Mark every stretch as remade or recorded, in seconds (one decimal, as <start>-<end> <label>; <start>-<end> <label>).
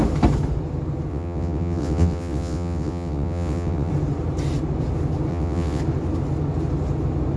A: 0.0-1.1 recorded; 1.1-3.9 remade; 3.9-5.3 recorded; 5.3-5.8 remade; 5.8-7.4 recorded